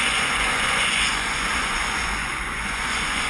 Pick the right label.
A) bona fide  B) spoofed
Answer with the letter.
B